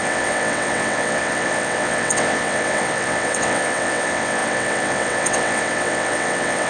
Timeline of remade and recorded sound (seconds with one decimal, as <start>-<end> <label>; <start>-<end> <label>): 0.0-6.7 remade